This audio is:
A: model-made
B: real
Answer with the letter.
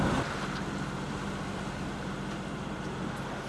B